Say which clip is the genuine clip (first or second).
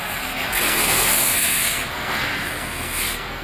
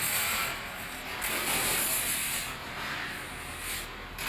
second